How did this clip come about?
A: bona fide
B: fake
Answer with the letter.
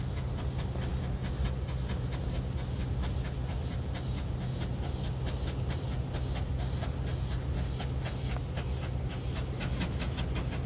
A